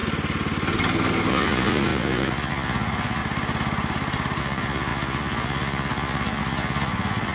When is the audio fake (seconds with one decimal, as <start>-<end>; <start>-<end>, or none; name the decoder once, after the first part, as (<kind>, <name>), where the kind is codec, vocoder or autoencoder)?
1.3-3.2 (vocoder, Vocos); 4.4-7.3